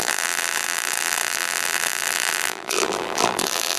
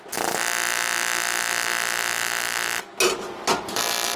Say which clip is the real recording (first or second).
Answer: second